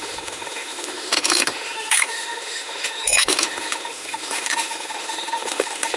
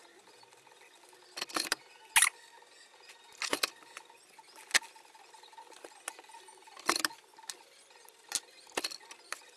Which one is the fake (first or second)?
first